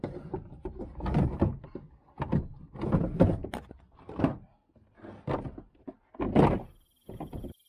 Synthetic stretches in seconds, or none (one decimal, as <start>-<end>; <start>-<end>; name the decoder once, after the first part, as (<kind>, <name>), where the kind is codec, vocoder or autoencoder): none